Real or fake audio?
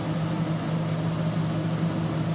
real